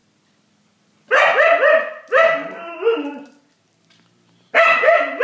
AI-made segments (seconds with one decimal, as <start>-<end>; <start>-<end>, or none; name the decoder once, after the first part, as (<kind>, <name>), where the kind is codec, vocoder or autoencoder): none